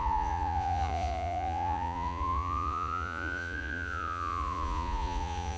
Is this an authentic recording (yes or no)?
no